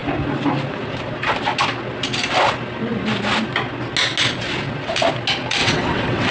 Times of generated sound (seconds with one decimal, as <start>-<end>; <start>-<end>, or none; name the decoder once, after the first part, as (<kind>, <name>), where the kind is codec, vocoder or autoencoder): 5.6-6.3 (vocoder, WaveNeXt)